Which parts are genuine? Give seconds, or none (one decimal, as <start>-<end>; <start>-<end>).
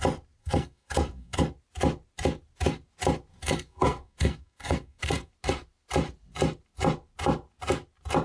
0.0-0.4; 1.4-3.3; 5.3-8.2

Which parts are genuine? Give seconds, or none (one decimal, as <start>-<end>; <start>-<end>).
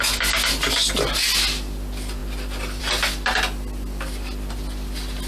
0.0-5.3